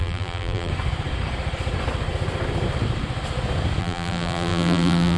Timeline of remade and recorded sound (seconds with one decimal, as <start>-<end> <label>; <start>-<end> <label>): 0.0-0.7 remade; 0.7-3.8 recorded; 3.8-5.2 remade